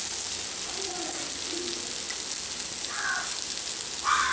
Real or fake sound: real